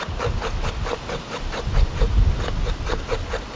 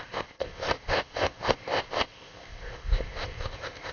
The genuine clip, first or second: first